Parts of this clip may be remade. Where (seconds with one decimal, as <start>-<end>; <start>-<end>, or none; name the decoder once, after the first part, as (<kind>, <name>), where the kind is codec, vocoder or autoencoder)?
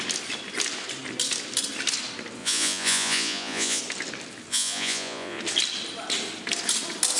2.4-3.8 (vocoder, Vocos); 4.5-5.4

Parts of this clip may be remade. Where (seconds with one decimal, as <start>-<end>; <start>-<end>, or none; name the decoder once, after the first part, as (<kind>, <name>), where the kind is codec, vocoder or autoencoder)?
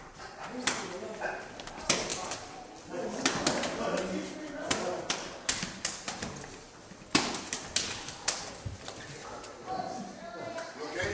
none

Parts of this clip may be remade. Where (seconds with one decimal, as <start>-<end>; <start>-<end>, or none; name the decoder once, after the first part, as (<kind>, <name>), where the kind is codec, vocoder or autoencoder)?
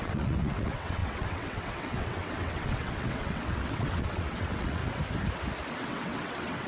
0.0-4.8 (vocoder, WaveNeXt); 5.7-6.7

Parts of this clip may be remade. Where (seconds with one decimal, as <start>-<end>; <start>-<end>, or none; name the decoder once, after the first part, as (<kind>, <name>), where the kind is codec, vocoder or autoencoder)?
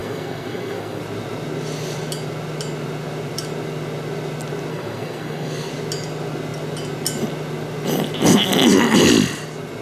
0.0-1.0 (codec, SNAC); 4.7-5.7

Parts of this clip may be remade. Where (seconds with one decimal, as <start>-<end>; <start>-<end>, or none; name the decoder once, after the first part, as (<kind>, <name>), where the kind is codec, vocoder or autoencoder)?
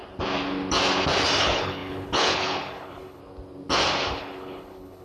1.4-3.2 (codec, HILCodec); 4.1-5.0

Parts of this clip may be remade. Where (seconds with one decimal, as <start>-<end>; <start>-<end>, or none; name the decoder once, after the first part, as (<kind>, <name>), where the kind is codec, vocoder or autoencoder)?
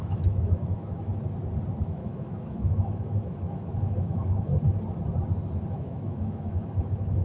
0.0-1.1 (autoencoder, DAC-VAE); 1.8-4.5; 5.7-7.2